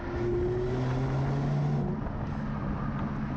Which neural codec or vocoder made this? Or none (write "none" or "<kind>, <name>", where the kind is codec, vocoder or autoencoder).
none